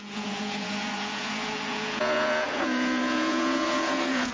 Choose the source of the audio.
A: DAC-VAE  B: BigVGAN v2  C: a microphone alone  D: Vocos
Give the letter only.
D